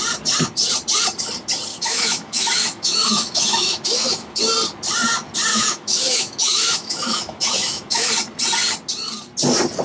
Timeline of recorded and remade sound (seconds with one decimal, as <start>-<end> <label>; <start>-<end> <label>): 0.0-1.7 recorded; 1.7-4.4 remade; 4.4-5.5 recorded; 5.5-8.1 remade; 8.1-9.8 recorded